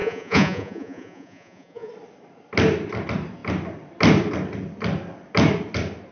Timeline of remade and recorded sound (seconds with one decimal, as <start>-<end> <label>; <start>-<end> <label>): 0.0-1.9 remade; 1.9-6.1 recorded